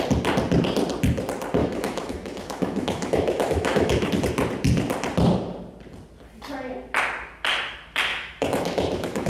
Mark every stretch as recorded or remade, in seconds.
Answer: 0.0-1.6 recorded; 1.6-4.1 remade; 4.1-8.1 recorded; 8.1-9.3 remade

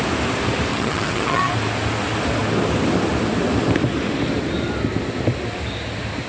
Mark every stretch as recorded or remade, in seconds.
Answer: 0.0-0.7 recorded; 0.7-1.5 remade; 1.5-6.3 recorded

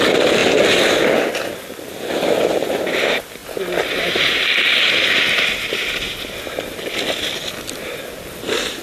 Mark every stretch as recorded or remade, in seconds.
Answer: 0.0-8.8 recorded

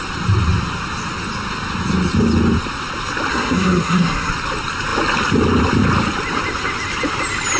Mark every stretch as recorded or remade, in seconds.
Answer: 0.0-3.3 recorded; 3.3-4.3 remade; 4.3-7.6 recorded